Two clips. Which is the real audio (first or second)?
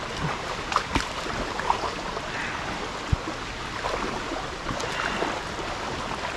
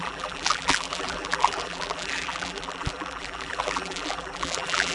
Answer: first